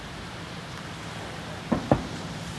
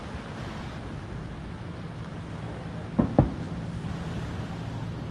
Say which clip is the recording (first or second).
second